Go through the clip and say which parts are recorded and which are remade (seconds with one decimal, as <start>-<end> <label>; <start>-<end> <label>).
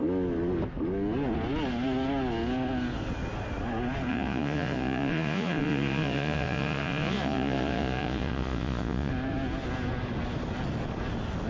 0.0-4.1 recorded; 4.1-9.1 remade; 9.1-11.5 recorded